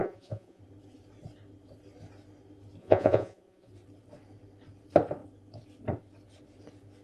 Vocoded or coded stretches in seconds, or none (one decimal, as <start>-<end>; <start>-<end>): 0.0-0.6; 2.8-3.7